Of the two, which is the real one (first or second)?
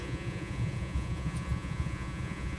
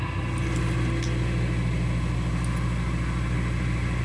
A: second